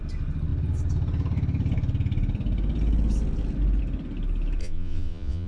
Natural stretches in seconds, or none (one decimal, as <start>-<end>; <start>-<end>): 0.0-4.6